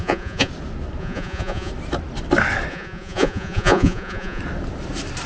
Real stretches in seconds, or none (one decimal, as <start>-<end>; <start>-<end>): 0.5-1.0; 1.7-2.7; 4.4-5.3